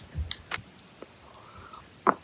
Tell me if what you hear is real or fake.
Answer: real